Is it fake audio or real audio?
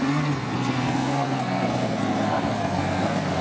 fake